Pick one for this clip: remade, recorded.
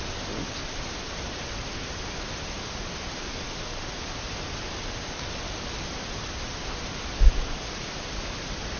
remade